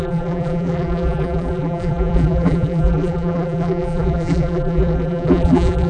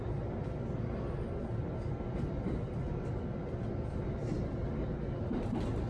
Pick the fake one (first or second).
first